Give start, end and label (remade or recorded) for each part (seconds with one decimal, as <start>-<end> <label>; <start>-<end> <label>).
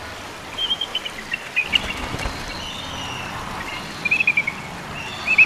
0.0-5.5 recorded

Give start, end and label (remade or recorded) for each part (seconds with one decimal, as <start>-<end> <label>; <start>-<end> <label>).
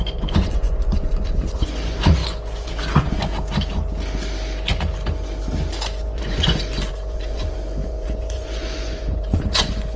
0.0-3.3 remade; 3.3-6.0 recorded; 6.0-10.0 remade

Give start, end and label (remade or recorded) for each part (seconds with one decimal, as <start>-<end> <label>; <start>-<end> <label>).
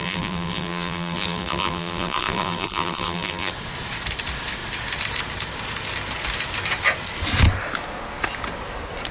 0.0-3.5 remade; 3.5-9.1 recorded